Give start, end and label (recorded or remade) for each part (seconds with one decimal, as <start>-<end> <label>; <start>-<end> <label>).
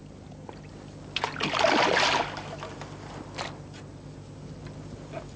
0.0-0.7 remade; 0.7-5.4 recorded